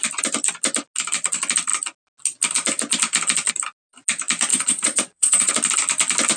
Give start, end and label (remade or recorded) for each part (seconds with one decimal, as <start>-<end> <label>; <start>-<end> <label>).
0.0-4.5 recorded; 4.5-5.5 remade; 5.5-6.4 recorded